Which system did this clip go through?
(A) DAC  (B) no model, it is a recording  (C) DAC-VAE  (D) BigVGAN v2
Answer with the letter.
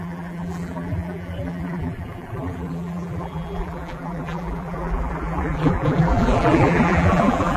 D